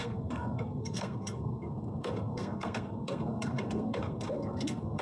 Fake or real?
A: fake